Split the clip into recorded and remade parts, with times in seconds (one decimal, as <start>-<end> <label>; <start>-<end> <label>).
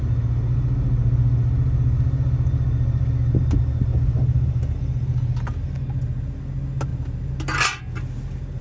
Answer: 0.0-8.6 recorded